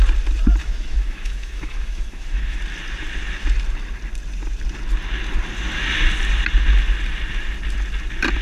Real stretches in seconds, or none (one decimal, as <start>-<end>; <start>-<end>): 0.0-0.6; 2.6-8.4